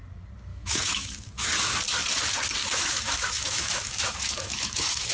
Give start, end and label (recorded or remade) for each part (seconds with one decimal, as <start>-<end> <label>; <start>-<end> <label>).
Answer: 0.0-0.5 recorded; 0.5-1.5 remade; 1.5-2.6 recorded; 2.6-5.1 remade